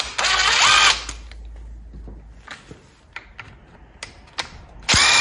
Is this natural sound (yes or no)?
yes